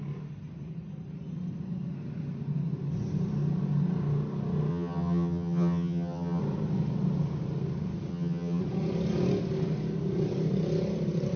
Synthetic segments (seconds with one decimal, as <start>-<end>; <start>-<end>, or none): 4.7-6.4; 8.1-8.6